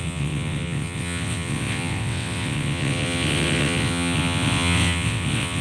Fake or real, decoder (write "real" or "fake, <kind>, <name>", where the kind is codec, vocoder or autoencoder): fake, vocoder, WaveNeXt